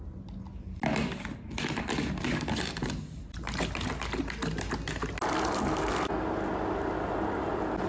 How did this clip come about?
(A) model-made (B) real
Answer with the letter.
B